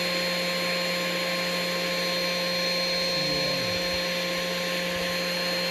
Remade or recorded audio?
recorded